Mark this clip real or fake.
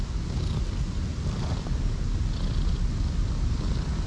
real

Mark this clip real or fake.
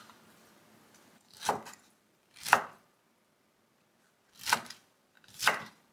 fake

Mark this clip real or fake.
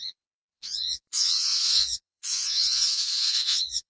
fake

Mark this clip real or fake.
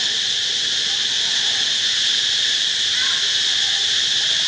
real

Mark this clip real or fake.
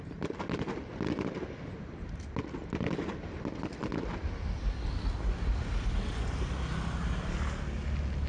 real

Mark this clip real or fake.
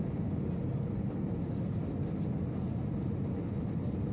real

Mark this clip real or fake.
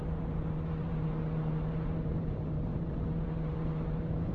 fake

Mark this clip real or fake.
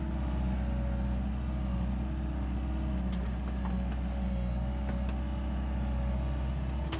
real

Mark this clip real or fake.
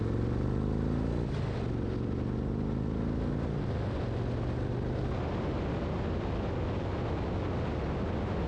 real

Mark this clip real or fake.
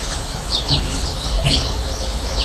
fake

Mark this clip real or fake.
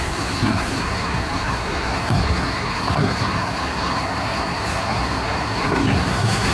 fake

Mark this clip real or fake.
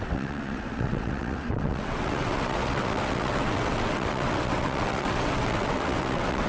fake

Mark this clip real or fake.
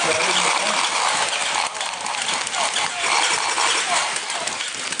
real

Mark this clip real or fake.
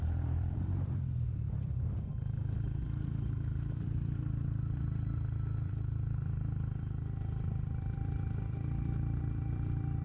fake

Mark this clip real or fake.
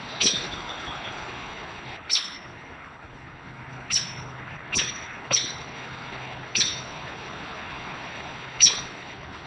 fake